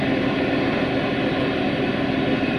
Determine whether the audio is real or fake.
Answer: real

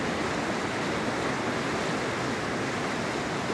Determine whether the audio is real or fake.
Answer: real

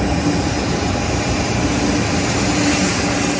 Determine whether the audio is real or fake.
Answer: real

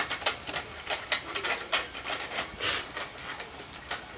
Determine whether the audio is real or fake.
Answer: real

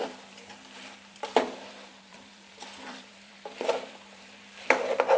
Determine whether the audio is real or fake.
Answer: fake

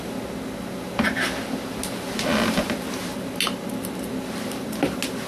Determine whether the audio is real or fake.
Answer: real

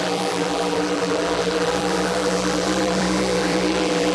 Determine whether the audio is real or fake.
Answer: fake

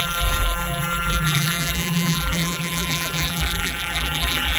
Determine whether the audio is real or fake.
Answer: fake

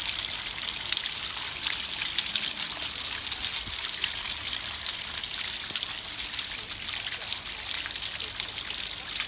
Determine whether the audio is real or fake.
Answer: real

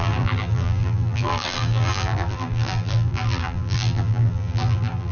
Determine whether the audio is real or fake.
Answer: fake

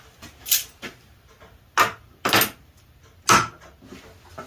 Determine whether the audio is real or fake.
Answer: real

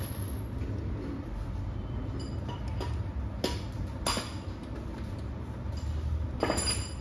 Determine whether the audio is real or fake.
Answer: real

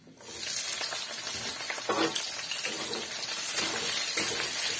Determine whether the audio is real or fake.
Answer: real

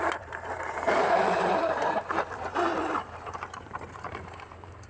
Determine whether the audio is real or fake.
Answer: fake